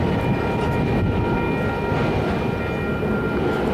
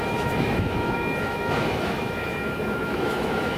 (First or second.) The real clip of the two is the first